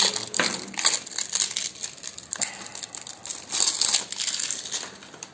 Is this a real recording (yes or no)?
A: yes